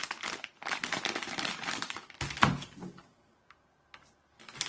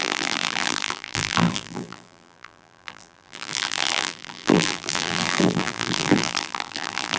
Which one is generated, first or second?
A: second